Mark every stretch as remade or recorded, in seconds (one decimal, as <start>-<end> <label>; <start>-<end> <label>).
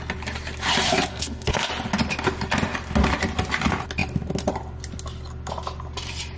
0.0-1.1 recorded; 1.1-1.7 remade; 1.7-6.4 recorded